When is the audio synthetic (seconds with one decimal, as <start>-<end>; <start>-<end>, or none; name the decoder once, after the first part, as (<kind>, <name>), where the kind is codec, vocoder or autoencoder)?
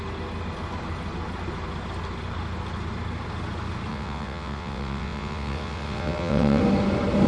3.9-6.6 (vocoder, WaveNeXt)